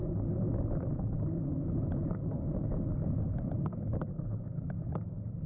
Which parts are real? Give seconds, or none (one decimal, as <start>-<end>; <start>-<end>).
0.0-4.1; 4.7-5.5